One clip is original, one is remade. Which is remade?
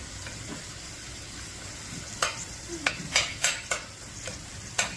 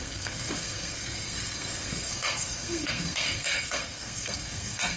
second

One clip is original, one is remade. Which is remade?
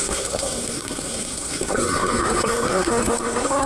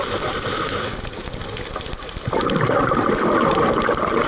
first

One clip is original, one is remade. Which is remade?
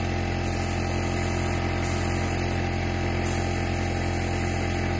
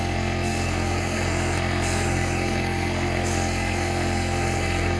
second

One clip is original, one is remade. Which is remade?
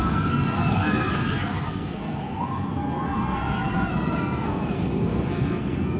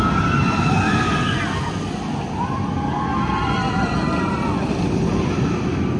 first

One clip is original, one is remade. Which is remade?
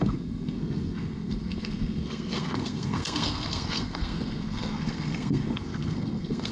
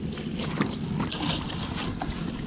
first